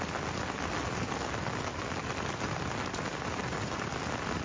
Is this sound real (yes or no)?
yes